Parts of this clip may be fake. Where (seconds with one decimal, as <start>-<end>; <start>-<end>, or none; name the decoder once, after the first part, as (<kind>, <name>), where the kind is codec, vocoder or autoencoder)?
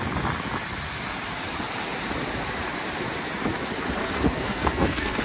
4.0-5.2 (codec, SNAC)